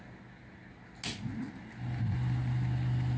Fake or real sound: real